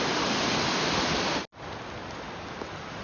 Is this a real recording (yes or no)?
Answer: yes